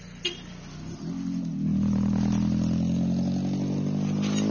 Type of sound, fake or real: real